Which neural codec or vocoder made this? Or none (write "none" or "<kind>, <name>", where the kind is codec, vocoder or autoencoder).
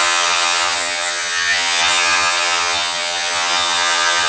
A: vocoder, HiFi-GAN